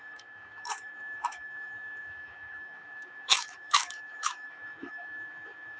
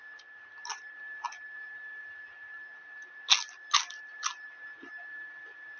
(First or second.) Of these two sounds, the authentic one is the second